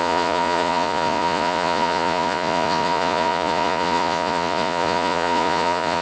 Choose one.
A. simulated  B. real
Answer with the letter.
A